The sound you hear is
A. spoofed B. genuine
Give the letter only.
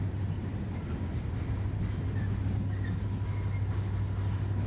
B